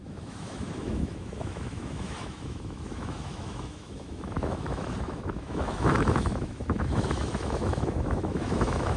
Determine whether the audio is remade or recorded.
remade